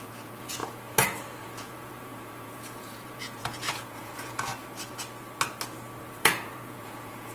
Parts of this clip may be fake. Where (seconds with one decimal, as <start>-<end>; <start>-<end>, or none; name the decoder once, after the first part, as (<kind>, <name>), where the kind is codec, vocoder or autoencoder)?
0.0-0.6 (vocoder, Vocos); 1.4-4.5; 6.0-7.3